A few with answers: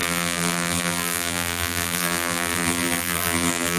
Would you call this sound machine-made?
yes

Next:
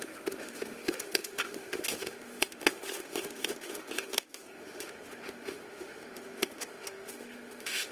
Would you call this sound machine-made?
yes